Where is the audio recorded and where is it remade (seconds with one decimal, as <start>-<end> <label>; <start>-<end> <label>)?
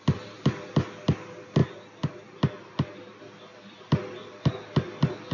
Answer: 0.0-5.3 recorded